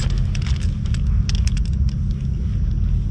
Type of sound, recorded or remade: recorded